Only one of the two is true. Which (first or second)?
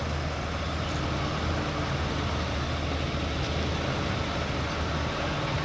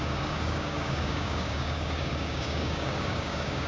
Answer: first